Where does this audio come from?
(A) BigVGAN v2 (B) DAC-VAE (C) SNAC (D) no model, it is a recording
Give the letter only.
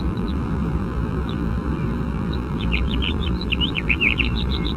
A